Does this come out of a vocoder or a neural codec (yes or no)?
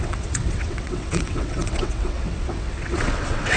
yes